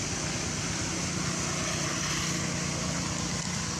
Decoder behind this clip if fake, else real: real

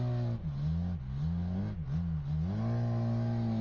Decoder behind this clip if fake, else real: real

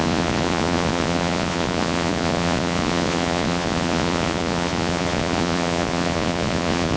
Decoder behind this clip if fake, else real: fake, vocoder, Vocos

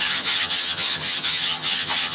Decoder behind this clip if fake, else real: fake, vocoder, HiFi-GAN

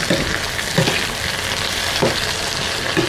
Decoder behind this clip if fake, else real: real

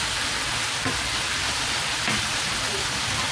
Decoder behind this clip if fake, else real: real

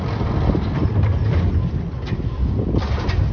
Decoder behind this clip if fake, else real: real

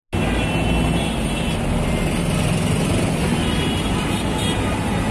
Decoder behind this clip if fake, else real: real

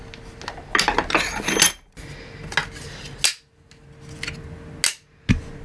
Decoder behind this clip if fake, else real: real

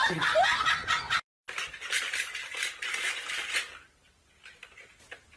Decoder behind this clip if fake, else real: real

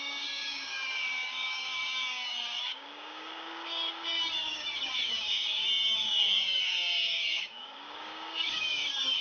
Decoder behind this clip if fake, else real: fake, codec, DAC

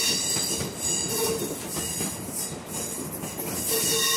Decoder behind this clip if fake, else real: real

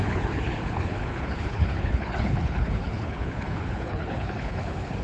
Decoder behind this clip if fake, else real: fake, codec, HILCodec